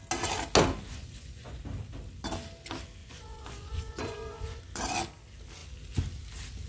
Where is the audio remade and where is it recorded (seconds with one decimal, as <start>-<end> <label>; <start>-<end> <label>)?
0.0-0.9 recorded; 0.9-1.6 remade; 1.6-3.0 recorded; 3.0-4.6 remade; 4.6-6.7 recorded